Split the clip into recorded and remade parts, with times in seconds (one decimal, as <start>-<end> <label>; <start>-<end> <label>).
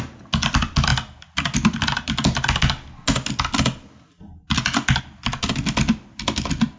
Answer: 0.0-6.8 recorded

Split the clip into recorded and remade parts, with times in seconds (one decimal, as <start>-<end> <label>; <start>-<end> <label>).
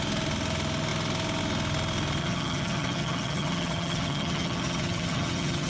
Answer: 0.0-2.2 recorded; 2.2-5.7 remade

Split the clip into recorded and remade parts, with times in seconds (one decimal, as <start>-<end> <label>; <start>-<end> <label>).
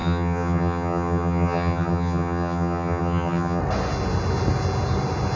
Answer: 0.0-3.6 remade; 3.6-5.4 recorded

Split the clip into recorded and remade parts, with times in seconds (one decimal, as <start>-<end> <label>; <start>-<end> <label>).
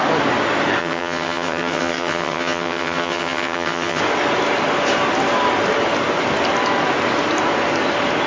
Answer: 0.0-0.8 recorded; 0.8-4.0 remade; 4.0-8.3 recorded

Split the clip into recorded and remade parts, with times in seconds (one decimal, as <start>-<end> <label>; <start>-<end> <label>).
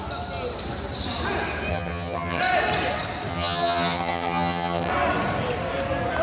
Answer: 0.0-1.7 recorded; 1.7-2.4 remade; 2.4-3.3 recorded; 3.3-4.9 remade; 4.9-6.2 recorded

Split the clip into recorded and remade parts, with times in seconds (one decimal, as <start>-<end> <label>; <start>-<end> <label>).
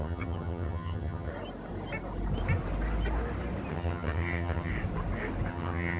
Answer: 0.0-1.3 remade; 1.3-3.7 recorded; 3.7-4.7 remade; 4.7-5.5 recorded; 5.5-6.0 remade